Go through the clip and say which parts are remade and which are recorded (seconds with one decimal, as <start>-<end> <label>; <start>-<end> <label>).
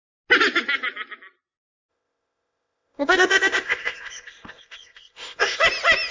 0.0-1.9 recorded; 1.9-5.6 remade; 5.6-6.1 recorded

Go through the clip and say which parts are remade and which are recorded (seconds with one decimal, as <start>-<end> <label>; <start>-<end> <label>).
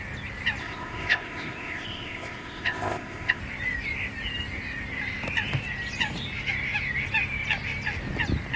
0.0-0.6 recorded; 0.6-3.4 remade; 3.4-8.6 recorded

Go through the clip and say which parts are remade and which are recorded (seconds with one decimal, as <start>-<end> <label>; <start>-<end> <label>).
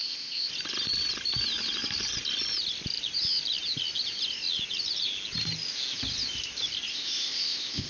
0.0-0.5 remade; 0.5-6.9 recorded; 6.9-7.9 remade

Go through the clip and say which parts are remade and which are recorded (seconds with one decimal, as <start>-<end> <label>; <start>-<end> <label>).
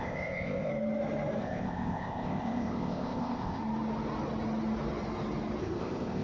0.0-0.7 remade; 0.7-1.4 recorded; 1.4-3.6 remade; 3.6-5.6 recorded; 5.6-6.2 remade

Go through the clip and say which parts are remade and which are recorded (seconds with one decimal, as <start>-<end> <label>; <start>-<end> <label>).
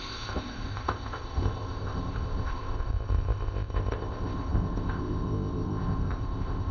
0.0-6.7 remade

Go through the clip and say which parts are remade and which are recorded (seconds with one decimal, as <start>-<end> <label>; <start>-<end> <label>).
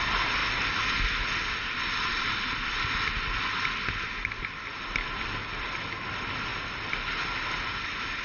0.0-8.2 recorded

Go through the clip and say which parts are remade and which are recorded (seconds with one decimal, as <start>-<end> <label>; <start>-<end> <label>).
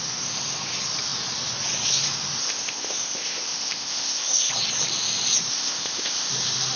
0.0-2.4 recorded; 2.4-4.5 remade; 4.5-5.5 recorded; 5.5-6.3 remade; 6.3-6.8 recorded